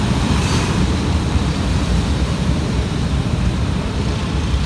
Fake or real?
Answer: fake